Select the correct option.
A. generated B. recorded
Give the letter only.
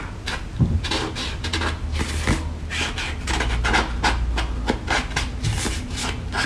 B